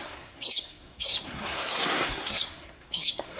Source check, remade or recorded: remade